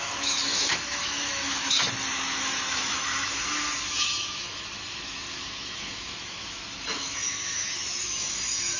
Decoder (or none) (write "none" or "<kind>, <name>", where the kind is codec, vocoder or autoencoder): autoencoder, DAC-VAE